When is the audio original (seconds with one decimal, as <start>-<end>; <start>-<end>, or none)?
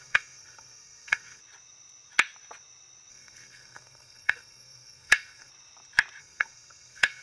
1.4-3.1; 5.5-6.2